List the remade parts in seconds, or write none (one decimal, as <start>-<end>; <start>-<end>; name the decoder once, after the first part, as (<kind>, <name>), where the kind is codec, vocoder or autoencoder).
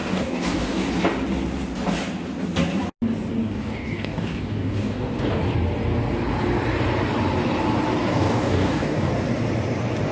0.0-0.9 (codec, DAC); 3.4-5.4; 8.1-9.1